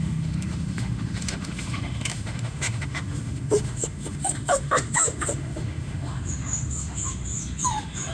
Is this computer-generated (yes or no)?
yes